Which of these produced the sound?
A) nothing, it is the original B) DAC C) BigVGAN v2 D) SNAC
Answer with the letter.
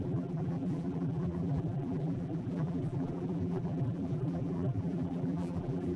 C